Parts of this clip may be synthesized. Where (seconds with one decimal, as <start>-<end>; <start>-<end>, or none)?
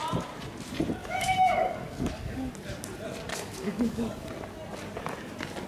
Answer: 1.0-2.5; 3.3-4.3